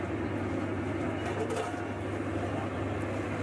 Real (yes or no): yes